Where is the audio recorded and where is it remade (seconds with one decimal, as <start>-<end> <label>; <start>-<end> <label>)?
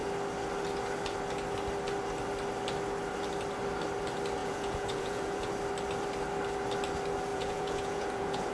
0.0-4.4 recorded; 4.4-5.5 remade; 5.5-7.3 recorded; 7.3-8.5 remade